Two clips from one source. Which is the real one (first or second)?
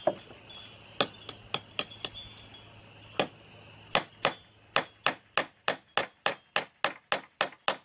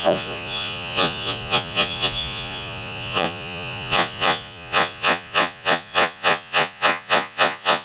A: first